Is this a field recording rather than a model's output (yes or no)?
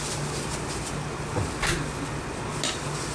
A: yes